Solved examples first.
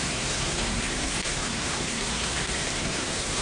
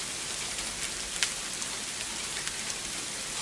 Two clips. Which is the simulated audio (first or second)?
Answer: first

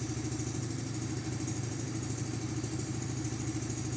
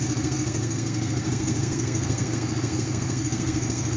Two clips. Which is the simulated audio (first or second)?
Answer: second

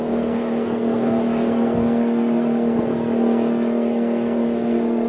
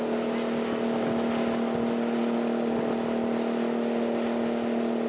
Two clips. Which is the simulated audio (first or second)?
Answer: first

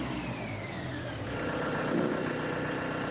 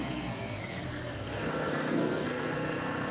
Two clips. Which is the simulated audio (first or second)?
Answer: second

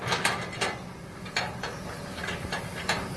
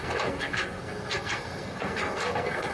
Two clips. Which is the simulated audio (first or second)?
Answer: second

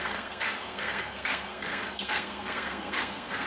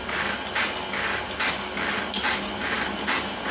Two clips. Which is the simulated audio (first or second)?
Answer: first